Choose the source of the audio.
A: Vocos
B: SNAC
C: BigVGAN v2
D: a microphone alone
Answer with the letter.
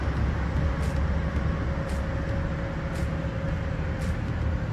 D